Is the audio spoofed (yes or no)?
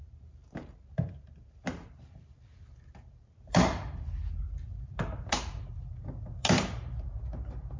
yes